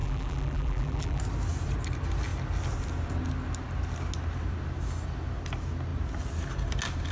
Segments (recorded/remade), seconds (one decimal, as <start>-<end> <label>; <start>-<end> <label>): 0.0-1.2 remade; 1.2-7.1 recorded